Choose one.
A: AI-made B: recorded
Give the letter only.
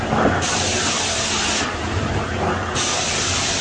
B